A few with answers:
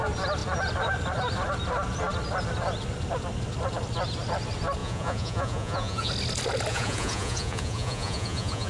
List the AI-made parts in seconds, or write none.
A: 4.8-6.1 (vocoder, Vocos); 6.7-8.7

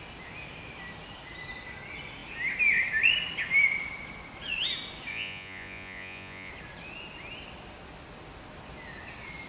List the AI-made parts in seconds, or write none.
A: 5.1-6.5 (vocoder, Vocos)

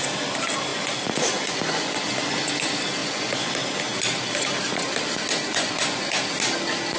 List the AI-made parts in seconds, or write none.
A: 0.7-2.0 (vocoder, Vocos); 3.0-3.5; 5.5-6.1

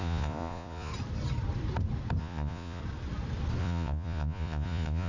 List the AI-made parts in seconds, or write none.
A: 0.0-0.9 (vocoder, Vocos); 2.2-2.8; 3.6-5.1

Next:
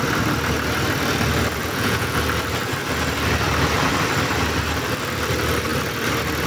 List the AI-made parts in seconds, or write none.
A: 1.6-2.2 (vocoder, Vocos)

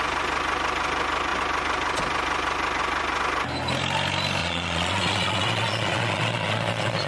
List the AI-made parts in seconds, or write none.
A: 4.4-7.1 (vocoder, Vocos)